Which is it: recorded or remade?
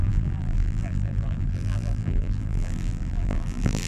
remade